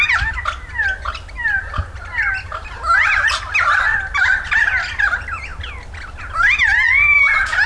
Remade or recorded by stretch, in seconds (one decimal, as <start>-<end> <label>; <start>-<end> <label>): 0.0-7.7 recorded